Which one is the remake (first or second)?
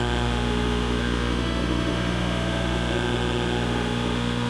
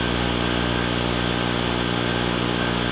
first